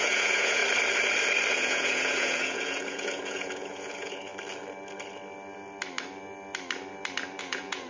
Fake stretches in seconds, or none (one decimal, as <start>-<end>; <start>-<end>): 0.0-0.6; 1.5-4.3; 7.4-7.9